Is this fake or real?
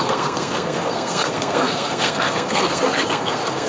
fake